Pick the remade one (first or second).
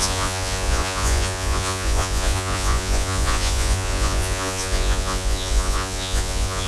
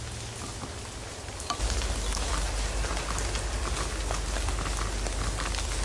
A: first